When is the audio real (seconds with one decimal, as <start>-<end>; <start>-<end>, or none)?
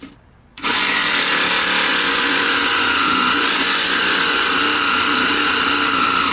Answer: 0.0-0.5; 1.1-1.9; 4.5-6.3